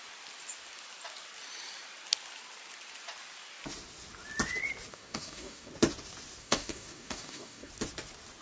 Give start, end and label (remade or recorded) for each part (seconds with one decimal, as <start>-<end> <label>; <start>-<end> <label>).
0.0-4.9 recorded; 4.9-5.7 remade; 5.7-6.4 recorded; 6.4-7.7 remade; 7.7-8.4 recorded